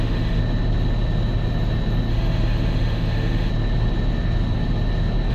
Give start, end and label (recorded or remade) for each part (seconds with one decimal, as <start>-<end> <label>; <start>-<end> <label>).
0.0-0.4 remade; 0.4-2.1 recorded; 2.1-3.5 remade; 3.5-5.3 recorded